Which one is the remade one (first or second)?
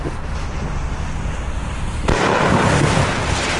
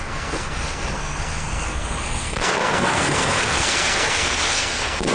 second